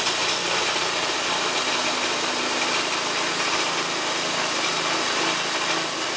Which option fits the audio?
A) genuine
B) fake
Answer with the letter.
A